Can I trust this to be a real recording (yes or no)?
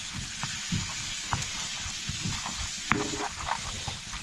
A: yes